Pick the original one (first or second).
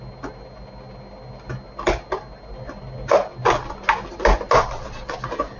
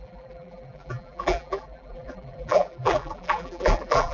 first